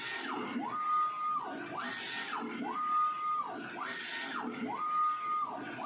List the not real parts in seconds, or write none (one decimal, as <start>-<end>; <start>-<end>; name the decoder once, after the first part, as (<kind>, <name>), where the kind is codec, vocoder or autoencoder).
none